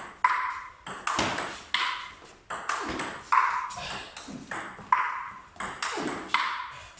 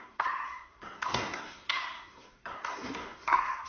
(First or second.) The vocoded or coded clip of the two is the second